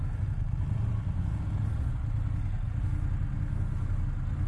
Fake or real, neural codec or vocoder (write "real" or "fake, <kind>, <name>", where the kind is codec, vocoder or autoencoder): real